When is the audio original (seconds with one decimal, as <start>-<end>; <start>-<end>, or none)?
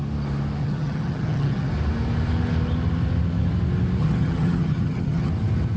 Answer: 0.0-0.6; 1.7-4.0; 5.3-5.8